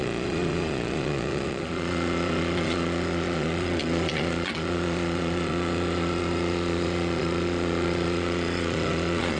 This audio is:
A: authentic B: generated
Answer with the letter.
B